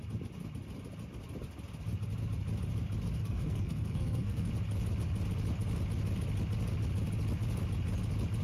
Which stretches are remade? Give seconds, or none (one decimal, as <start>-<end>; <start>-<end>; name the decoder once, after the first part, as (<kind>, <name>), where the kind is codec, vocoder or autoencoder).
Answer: 3.2-4.5 (codec, SNAC)

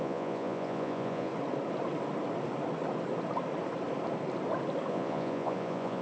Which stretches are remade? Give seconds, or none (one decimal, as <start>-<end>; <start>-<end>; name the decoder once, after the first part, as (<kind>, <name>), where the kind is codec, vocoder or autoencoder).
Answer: 0.0-1.3 (vocoder, Vocos); 4.9-6.0

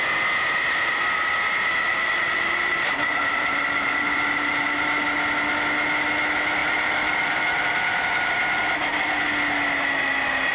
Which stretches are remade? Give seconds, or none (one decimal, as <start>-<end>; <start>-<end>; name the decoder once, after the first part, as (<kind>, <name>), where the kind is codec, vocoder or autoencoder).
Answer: 1.9-5.0 (vocoder, BigVGAN v2); 6.6-8.3

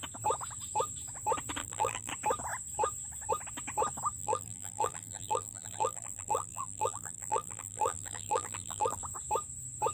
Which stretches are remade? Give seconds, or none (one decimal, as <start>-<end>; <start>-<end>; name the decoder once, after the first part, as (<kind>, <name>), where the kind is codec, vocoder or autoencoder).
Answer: 1.6-2.1 (vocoder, BigVGAN v2); 4.2-9.0

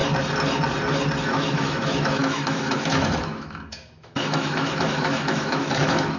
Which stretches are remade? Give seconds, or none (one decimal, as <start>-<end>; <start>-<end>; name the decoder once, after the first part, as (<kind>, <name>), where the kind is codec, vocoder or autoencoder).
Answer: 1.2-6.2 (autoencoder, DAC-VAE)

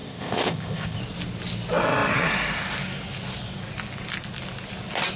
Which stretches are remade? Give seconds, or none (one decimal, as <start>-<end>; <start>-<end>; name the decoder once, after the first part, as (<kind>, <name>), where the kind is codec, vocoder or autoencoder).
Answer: 0.0-1.0 (codec, ZipCodec)

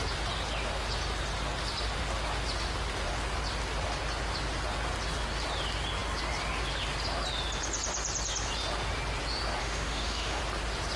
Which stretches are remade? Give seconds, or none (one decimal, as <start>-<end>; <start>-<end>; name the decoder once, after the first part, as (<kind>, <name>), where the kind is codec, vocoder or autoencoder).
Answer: 9.6-10.4 (autoencoder, DAC-VAE)